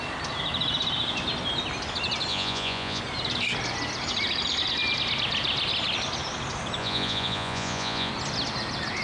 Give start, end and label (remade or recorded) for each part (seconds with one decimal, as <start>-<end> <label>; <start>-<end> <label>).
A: 0.0-2.3 recorded; 2.3-3.0 remade; 3.0-6.8 recorded; 6.8-8.1 remade; 8.1-9.0 recorded